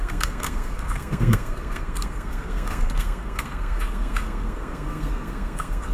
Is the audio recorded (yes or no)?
no